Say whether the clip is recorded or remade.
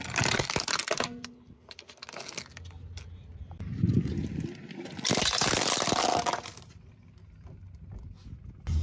recorded